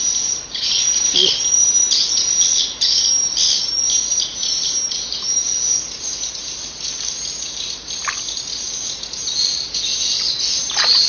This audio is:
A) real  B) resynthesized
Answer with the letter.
A